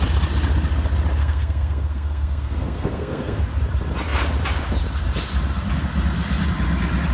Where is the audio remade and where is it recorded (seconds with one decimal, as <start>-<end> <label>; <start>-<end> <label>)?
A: 0.0-1.2 recorded; 1.2-3.4 remade; 3.4-7.1 recorded